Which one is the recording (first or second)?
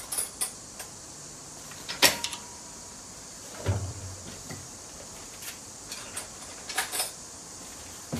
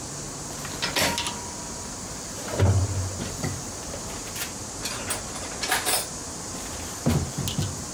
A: second